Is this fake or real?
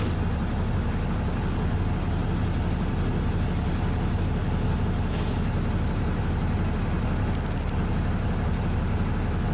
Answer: real